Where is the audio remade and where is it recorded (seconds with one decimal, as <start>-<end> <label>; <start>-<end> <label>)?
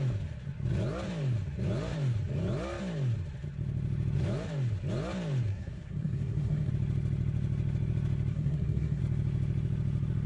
0.0-5.5 recorded; 5.5-6.7 remade; 6.7-8.3 recorded; 8.3-9.0 remade; 9.0-10.3 recorded